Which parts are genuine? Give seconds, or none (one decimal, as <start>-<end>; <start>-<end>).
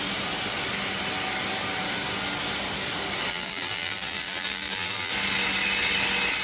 0.0-3.3; 5.1-6.4